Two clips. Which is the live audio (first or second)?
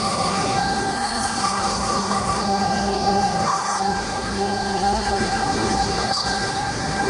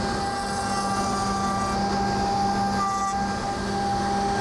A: second